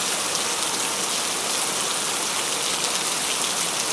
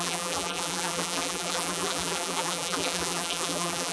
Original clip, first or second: first